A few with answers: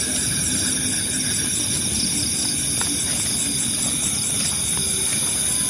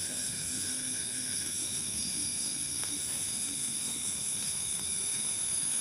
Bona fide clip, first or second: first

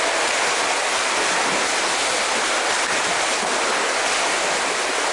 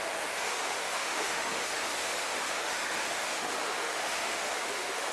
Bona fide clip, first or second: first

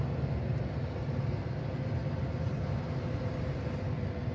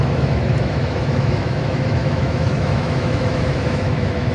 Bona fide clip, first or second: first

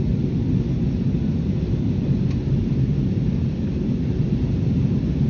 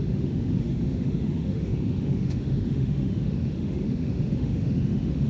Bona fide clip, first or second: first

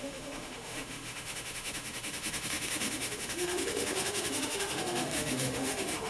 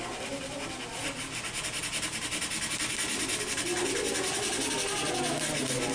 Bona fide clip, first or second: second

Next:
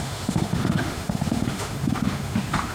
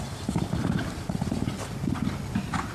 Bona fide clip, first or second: second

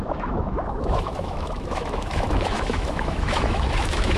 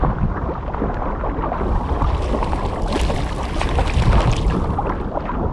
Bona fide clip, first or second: second